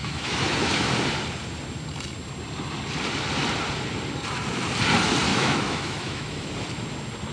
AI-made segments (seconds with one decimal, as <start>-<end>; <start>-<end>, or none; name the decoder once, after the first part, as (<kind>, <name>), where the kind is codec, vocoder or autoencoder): 0.0-0.9 (autoencoder, DAC-VAE); 5.3-6.5